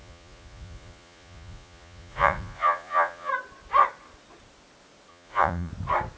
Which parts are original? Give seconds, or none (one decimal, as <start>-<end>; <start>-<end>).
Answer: 3.3-5.1; 5.7-6.2

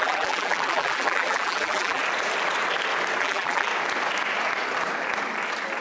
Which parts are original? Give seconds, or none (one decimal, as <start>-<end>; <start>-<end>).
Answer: 2.0-3.2; 3.7-5.8

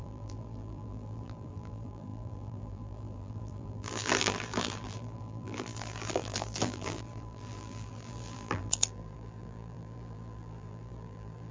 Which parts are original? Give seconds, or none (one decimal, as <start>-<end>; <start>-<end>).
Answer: none

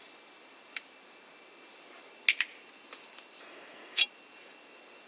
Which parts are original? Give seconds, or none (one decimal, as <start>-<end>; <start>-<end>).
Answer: 0.0-3.4; 4.0-5.1

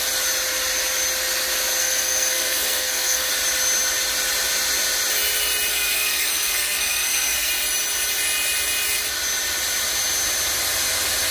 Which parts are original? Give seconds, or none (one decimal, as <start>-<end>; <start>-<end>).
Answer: 0.0-1.8; 3.3-5.7; 7.5-11.3

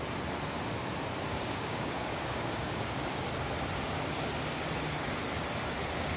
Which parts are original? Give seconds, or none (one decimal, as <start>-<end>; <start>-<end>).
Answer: 0.0-1.3; 3.0-6.2